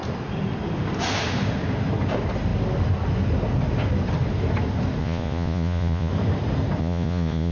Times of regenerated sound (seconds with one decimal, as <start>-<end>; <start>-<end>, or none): 5.0-6.1; 6.8-7.5